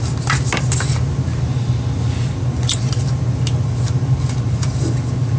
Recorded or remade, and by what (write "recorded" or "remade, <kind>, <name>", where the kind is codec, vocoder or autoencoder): recorded